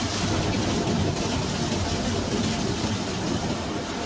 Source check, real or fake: real